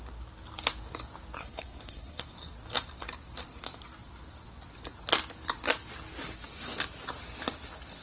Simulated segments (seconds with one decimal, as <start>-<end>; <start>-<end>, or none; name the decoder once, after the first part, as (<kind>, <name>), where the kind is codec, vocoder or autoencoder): 1.4-2.2 (codec, SNAC)